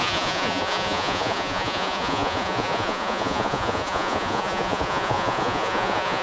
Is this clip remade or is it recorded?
remade